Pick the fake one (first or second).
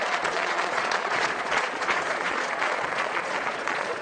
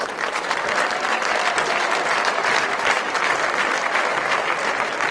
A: first